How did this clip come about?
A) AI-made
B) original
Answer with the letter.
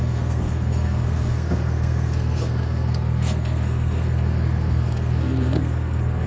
A